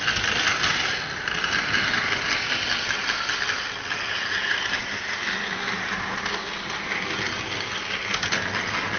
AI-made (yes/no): no